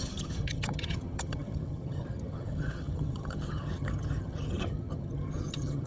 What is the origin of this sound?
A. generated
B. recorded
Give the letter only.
A